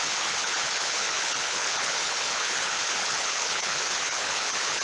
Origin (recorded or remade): remade